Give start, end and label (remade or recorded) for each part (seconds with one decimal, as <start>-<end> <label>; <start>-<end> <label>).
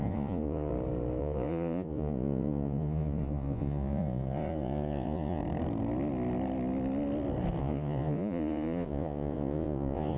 0.0-0.7 remade; 0.7-1.2 recorded; 1.2-5.4 remade; 5.4-7.6 recorded; 7.6-10.2 remade